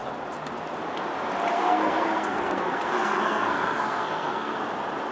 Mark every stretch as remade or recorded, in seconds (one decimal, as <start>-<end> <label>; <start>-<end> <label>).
0.0-1.5 recorded; 1.5-4.6 remade; 4.6-5.1 recorded